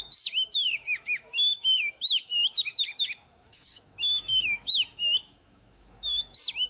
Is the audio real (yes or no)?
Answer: no